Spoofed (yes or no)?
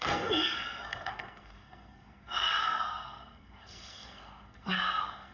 yes